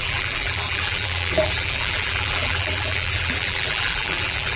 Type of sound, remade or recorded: remade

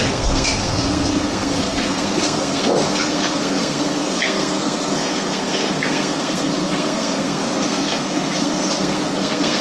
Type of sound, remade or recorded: remade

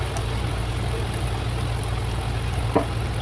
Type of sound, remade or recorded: recorded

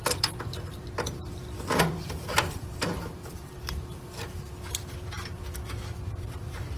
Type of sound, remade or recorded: remade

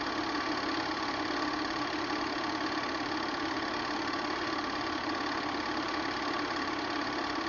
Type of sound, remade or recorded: recorded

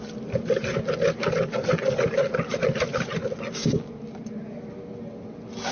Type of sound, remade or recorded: recorded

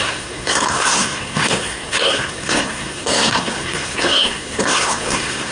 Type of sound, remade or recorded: remade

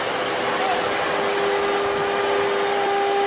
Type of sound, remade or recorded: recorded